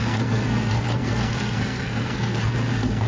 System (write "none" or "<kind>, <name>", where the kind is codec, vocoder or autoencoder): codec, SNAC